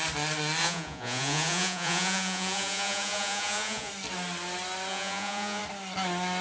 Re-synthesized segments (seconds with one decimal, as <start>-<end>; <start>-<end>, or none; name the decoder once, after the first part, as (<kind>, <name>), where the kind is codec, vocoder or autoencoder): 0.6-3.9 (vocoder, Vocos); 4.9-5.6